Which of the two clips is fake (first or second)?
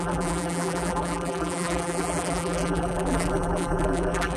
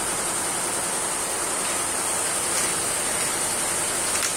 first